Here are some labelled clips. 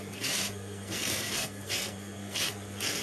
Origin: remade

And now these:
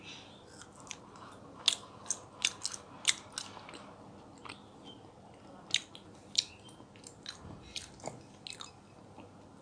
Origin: recorded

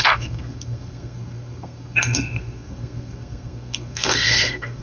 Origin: remade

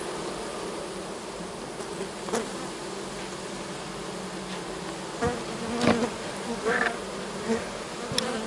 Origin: recorded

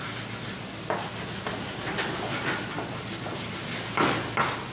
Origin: recorded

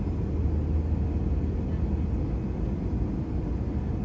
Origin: recorded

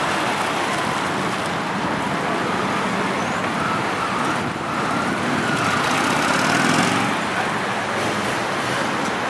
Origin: recorded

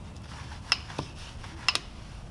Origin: recorded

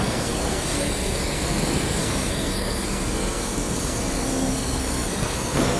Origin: remade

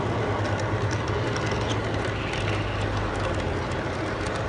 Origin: recorded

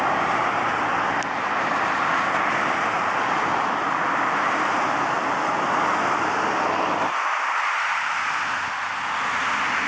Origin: recorded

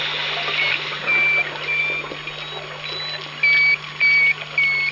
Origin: recorded